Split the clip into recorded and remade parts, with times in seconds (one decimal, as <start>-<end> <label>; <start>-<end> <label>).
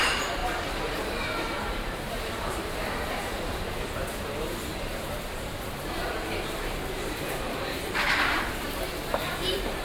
0.0-9.8 remade